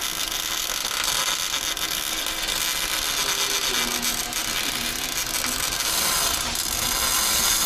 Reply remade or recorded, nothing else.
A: recorded